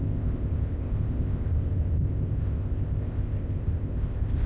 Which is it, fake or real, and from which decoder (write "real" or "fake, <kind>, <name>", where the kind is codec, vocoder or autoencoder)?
fake, codec, ZipCodec